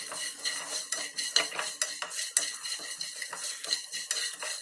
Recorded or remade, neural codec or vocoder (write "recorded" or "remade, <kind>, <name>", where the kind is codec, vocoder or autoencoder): recorded